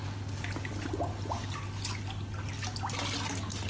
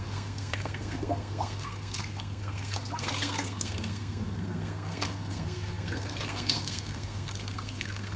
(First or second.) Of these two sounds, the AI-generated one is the second